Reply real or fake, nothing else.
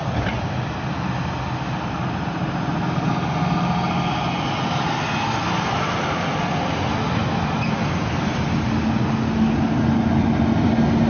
real